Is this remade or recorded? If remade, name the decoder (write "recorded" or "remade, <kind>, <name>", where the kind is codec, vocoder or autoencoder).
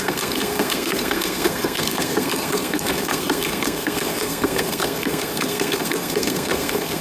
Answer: remade, codec, SNAC